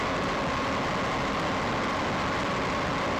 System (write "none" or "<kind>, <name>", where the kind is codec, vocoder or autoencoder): none